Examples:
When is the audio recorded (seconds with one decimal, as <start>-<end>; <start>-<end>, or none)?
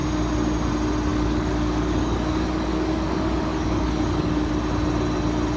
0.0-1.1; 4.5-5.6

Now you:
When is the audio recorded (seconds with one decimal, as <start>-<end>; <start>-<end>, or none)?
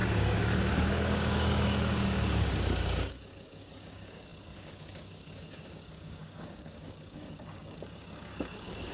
none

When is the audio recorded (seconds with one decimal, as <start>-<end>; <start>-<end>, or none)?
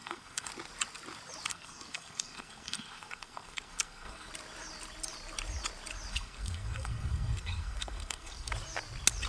0.5-1.5; 4.3-6.1; 8.5-9.3